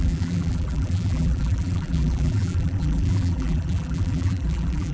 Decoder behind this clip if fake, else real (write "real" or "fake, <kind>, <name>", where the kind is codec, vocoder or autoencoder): fake, vocoder, BigVGAN v2